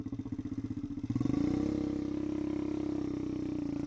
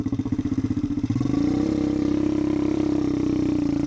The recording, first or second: first